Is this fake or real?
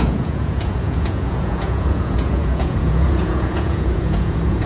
fake